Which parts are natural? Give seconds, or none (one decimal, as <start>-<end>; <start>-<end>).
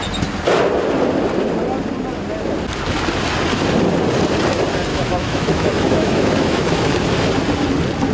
0.0-4.9; 6.9-8.1